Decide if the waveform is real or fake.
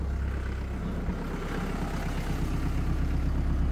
real